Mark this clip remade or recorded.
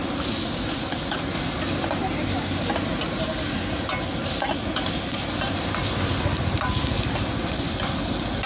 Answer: recorded